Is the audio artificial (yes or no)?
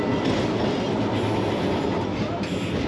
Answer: no